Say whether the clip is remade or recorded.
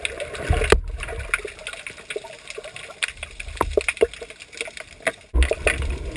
recorded